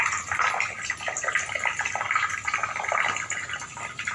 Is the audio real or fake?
real